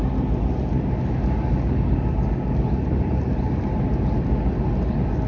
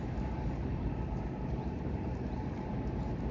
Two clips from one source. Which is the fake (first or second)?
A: second